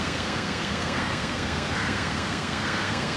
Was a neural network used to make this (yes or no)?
yes